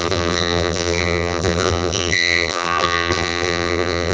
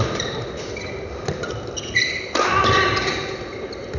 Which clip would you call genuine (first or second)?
second